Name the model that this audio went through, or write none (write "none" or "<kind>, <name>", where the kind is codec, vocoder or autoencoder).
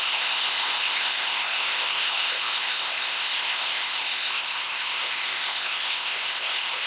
codec, ZipCodec